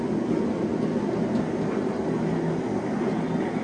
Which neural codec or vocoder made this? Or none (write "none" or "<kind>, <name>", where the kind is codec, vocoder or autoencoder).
none